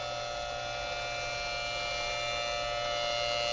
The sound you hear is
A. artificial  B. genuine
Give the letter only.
B